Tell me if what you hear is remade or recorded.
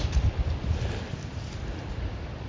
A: recorded